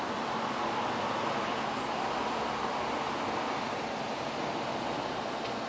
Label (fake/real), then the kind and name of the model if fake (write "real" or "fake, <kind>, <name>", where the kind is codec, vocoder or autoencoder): real